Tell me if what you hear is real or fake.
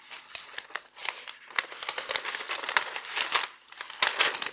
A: real